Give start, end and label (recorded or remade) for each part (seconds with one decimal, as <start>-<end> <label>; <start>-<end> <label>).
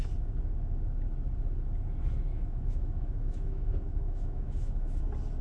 0.0-2.3 recorded; 2.3-5.0 remade; 5.0-5.4 recorded